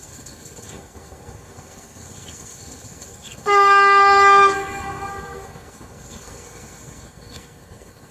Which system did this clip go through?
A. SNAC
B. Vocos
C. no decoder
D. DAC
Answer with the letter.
A